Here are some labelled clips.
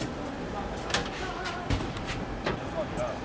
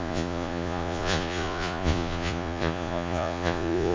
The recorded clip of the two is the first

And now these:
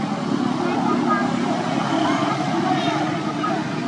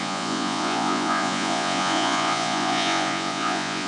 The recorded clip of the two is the first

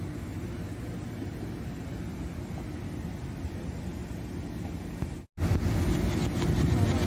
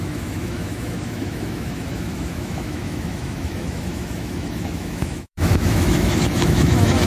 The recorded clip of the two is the first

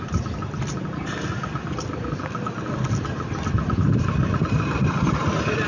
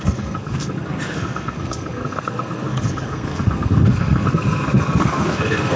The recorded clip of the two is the first